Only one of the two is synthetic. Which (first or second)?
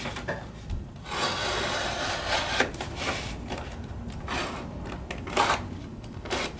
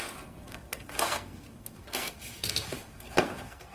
second